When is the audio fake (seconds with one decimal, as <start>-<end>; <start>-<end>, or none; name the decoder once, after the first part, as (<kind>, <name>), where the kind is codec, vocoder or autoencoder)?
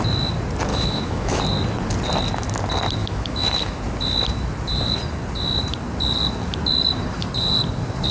0.7-1.4 (autoencoder, DAC-VAE); 3.0-3.8